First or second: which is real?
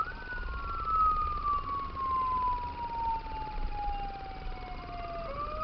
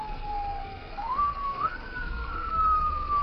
first